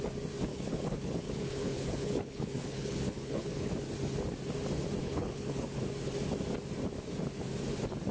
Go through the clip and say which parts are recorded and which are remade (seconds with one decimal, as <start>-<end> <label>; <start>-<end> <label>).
0.0-0.5 recorded; 0.5-3.7 remade; 3.7-5.0 recorded; 5.0-5.8 remade; 5.8-8.1 recorded